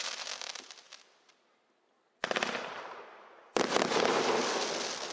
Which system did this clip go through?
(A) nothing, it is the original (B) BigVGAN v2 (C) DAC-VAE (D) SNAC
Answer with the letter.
A